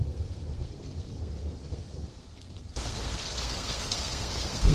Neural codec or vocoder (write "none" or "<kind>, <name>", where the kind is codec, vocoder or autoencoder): codec, SNAC